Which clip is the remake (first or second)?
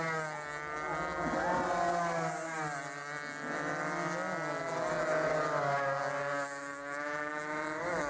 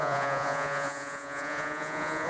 second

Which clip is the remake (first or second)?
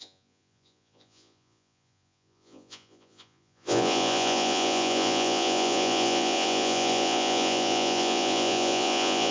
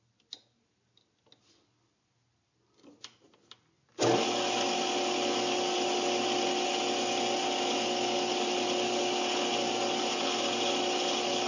first